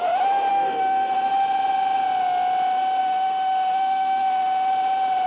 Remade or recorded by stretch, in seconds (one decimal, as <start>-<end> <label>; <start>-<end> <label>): 0.0-0.5 recorded; 0.5-1.3 remade; 1.3-3.0 recorded; 3.0-4.7 remade; 4.7-5.3 recorded